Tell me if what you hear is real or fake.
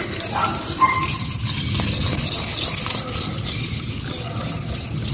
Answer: real